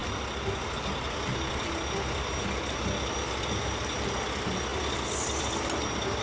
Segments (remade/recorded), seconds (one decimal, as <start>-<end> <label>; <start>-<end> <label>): 0.0-6.2 recorded